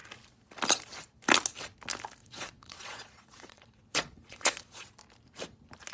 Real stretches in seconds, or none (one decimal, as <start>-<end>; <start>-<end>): 0.0-2.2; 4.9-5.9